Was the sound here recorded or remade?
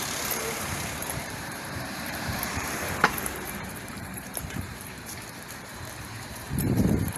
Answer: remade